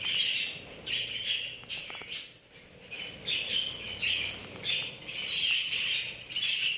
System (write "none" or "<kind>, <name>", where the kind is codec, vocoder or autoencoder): none